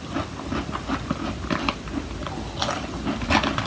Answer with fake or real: real